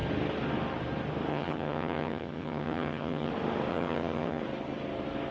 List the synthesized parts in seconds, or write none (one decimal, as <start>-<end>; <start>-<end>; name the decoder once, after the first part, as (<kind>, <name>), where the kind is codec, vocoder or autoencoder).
1.3-3.3 (vocoder, HiFi-GAN); 3.7-4.4